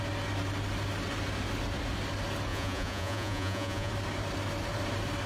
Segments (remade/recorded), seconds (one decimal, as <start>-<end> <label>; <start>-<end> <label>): 0.0-2.5 recorded; 2.5-3.9 remade; 3.9-5.3 recorded